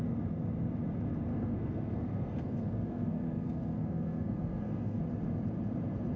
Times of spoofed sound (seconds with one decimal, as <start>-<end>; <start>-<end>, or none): 1.3-5.0